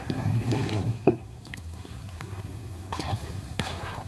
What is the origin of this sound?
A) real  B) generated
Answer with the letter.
B